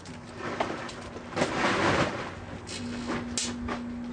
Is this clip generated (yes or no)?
no